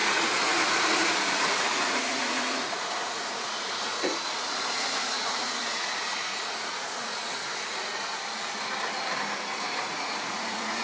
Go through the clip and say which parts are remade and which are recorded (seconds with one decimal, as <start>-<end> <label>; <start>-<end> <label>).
0.0-8.1 remade; 8.1-9.6 recorded; 9.6-10.8 remade